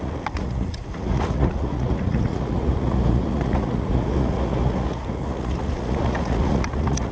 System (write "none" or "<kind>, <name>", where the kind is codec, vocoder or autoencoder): vocoder, Vocos